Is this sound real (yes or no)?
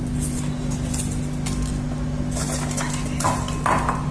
yes